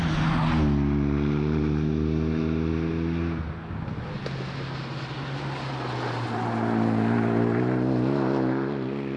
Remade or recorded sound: recorded